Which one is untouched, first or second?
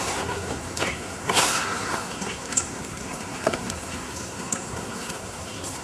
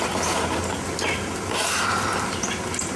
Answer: second